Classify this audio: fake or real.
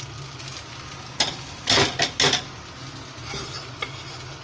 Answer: real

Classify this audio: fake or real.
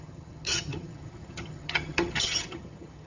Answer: fake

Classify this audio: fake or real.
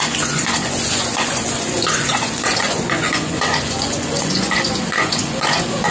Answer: fake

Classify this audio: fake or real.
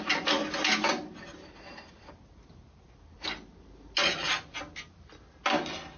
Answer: real